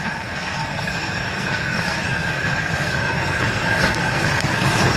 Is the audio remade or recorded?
remade